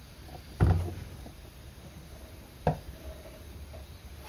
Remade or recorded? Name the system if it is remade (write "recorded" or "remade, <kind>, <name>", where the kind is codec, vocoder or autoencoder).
remade, vocoder, BigVGAN v2